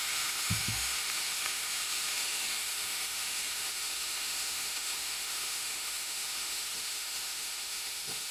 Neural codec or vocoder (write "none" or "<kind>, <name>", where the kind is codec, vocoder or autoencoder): autoencoder, DAC-VAE